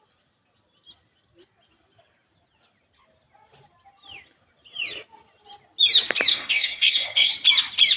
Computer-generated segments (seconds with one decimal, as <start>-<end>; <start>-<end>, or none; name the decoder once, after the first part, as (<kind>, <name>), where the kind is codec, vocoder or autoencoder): 6.3-7.3 (codec, SNAC)

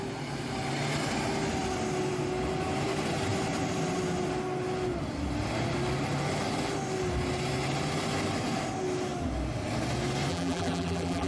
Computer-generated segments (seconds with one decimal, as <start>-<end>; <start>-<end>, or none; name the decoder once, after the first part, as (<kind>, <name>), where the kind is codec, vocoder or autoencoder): 10.3-11.3 (vocoder, BigVGAN v2)

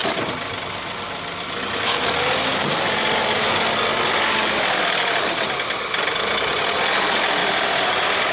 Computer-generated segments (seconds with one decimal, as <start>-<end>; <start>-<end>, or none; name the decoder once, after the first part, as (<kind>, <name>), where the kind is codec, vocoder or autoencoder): 2.5-6.7 (vocoder, BigVGAN v2); 7.4-8.3

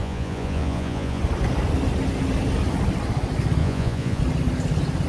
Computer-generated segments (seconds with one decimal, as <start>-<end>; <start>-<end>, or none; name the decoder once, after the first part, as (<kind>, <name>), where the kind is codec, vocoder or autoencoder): 0.0-1.2 (vocoder, Vocos); 3.6-4.2

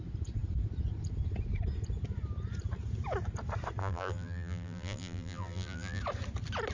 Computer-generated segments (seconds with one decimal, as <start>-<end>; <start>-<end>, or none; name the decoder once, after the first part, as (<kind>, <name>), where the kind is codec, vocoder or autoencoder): 3.8-6.0 (vocoder, BigVGAN v2)